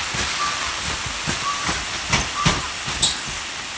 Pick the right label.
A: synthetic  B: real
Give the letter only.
B